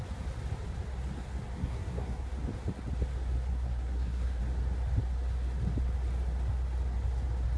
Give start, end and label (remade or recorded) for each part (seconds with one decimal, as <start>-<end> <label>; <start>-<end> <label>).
0.0-1.6 recorded; 1.6-2.3 remade; 2.3-3.5 recorded; 3.5-4.4 remade; 4.4-7.6 recorded